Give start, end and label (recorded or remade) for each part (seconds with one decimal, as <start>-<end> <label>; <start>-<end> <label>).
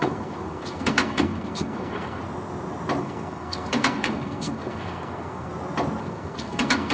0.0-2.2 remade; 2.2-3.0 recorded; 3.0-5.5 remade; 5.5-6.0 recorded; 6.0-6.9 remade